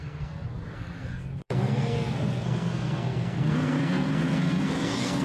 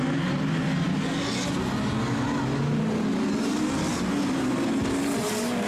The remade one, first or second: first